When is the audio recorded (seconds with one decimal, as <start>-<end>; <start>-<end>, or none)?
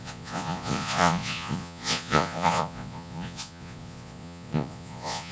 none